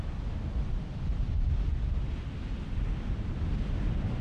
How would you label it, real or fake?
real